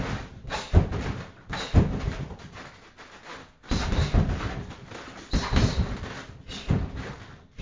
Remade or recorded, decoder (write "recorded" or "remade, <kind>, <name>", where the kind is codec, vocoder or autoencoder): recorded